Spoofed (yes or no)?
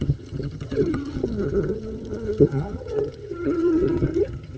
yes